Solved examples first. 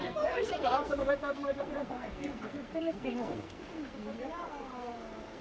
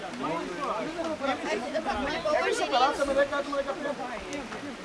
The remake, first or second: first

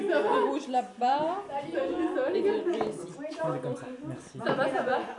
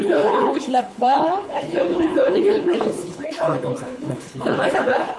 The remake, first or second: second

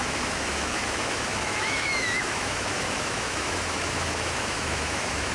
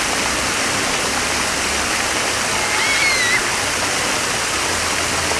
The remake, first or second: first